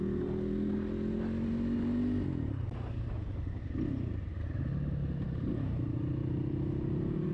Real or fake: real